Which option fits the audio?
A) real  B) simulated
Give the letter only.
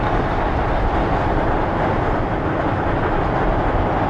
A